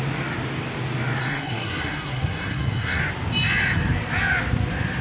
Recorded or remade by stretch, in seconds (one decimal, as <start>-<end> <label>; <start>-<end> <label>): 0.0-1.2 recorded; 1.2-3.0 remade; 3.0-5.0 recorded

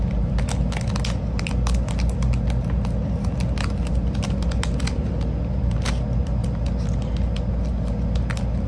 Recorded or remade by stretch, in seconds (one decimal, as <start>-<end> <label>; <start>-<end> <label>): 0.0-8.7 recorded

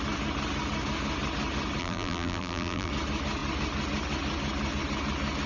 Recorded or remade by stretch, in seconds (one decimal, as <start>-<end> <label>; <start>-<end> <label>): 0.0-1.8 recorded; 1.8-2.9 remade; 2.9-5.5 recorded

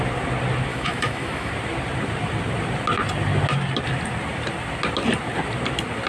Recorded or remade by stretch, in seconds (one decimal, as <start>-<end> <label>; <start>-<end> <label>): 0.0-0.7 recorded; 0.7-1.5 remade; 1.5-6.1 recorded

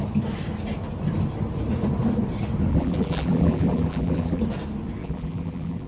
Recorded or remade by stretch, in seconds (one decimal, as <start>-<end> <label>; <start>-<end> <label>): 0.0-2.7 recorded; 2.7-4.4 remade; 4.4-5.0 recorded; 5.0-5.9 remade

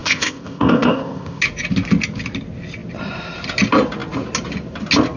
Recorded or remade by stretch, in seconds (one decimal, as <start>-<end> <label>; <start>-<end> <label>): 0.0-1.4 remade; 1.4-5.2 recorded

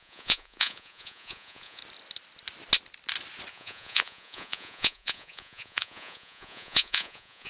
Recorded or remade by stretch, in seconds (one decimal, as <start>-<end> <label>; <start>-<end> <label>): 0.0-1.8 remade; 1.8-3.5 recorded; 3.5-7.5 remade

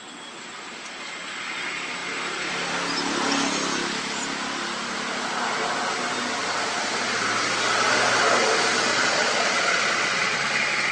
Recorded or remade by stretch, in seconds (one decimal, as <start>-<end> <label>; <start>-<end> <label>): 0.0-8.9 recorded; 8.9-10.5 remade; 10.5-10.9 recorded